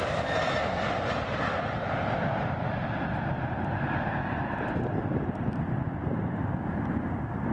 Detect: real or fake real